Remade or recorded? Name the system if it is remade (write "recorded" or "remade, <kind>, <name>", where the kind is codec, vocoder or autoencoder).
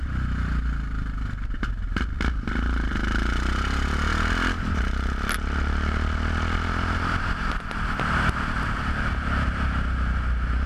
recorded